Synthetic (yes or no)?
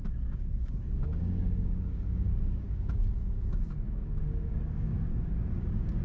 yes